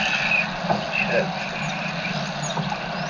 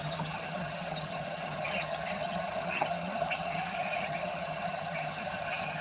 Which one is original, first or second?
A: first